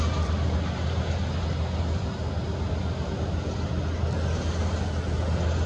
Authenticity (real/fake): real